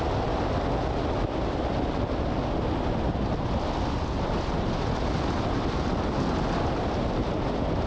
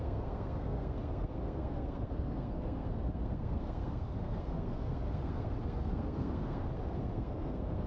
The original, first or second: first